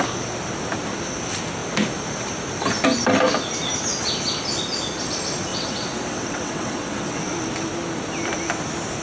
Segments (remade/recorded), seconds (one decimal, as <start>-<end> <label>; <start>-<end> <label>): 0.0-5.5 recorded; 5.5-7.2 remade; 7.2-9.0 recorded